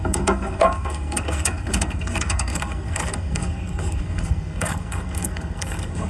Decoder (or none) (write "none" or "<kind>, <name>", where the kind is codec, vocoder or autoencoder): codec, SNAC